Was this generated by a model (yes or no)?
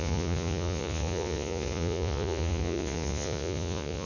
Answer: yes